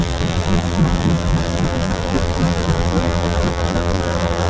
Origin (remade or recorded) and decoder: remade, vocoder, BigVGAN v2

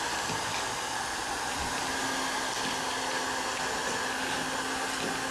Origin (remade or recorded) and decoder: recorded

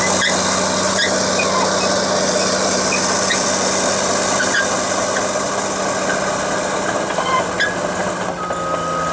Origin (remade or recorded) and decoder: recorded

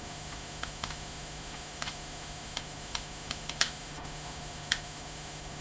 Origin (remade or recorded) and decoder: remade, autoencoder, DAC-VAE